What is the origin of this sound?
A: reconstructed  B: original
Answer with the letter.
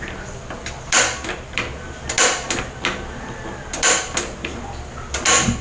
B